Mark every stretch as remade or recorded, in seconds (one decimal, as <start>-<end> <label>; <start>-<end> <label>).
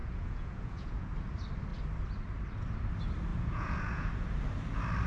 0.0-1.1 remade; 1.1-3.3 recorded; 3.3-4.1 remade; 4.1-5.1 recorded